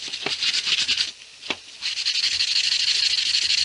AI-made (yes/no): no